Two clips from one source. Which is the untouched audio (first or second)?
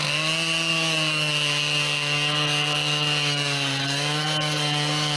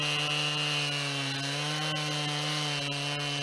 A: second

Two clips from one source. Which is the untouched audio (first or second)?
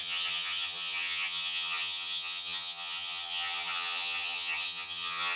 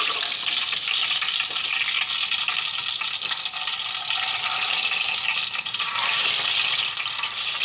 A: second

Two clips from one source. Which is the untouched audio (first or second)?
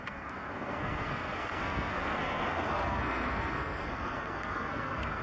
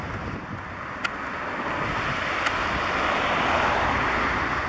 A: second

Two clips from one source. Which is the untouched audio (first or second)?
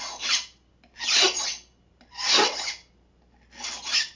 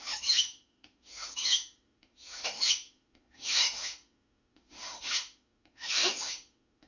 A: first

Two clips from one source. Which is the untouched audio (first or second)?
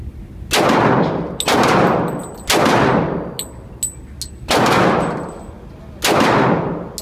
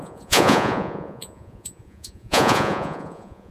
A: first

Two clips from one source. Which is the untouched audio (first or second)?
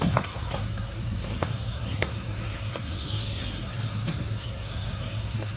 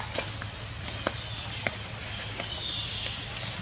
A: second